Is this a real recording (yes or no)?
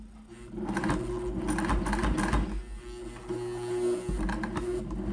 yes